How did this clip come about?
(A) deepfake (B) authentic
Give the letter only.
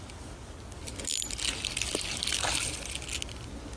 B